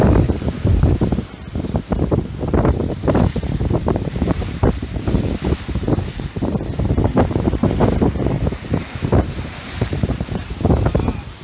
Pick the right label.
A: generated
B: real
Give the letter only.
A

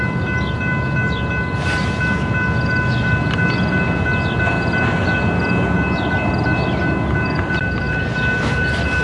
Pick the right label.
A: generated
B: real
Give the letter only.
B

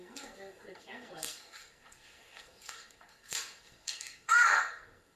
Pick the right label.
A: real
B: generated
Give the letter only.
B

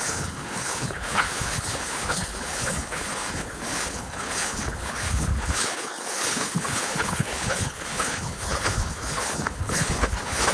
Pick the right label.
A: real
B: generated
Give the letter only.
B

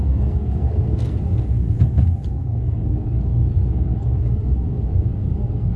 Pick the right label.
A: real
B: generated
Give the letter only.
B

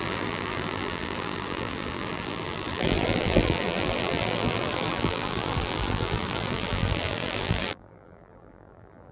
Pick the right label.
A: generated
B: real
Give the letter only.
A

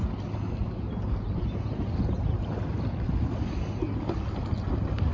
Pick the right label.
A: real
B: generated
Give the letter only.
A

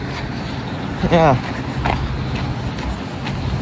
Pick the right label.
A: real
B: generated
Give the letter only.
A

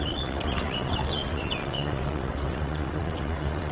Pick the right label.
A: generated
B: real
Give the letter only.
A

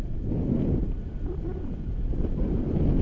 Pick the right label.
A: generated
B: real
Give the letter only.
B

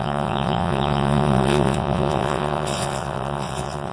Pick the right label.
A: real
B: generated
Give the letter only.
B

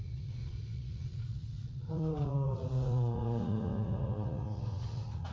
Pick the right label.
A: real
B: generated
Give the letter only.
B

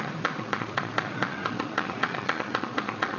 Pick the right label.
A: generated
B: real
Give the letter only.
A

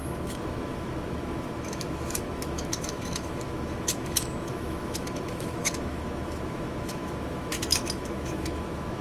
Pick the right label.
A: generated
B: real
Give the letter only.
A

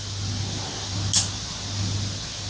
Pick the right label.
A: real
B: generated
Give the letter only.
A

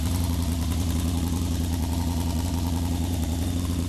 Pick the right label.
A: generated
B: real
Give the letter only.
A